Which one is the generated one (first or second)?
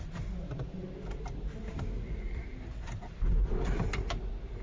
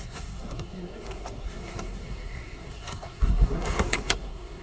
second